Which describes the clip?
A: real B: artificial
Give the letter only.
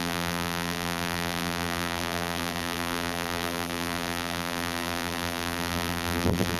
B